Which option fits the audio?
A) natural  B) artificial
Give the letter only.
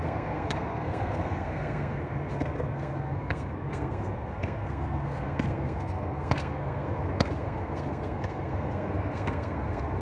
B